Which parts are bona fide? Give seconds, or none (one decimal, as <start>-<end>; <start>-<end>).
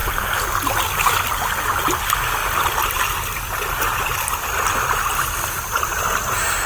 0.0-6.7